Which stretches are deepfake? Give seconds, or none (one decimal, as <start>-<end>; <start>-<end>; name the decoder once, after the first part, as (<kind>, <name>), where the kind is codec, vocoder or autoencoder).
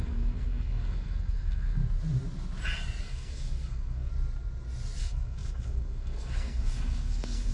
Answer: 0.0-1.8 (codec, SNAC); 3.0-4.1; 5.0-7.5